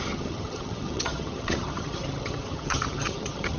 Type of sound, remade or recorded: remade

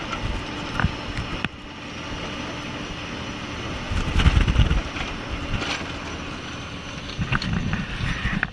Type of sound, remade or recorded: recorded